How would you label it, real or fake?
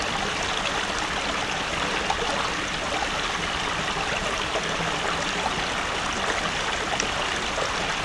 real